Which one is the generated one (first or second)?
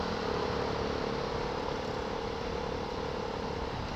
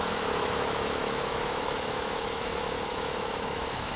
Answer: second